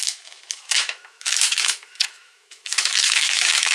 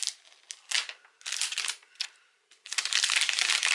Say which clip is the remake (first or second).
first